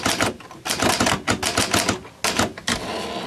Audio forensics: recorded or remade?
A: recorded